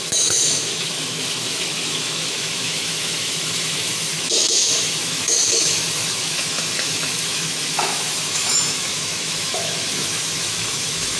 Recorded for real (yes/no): no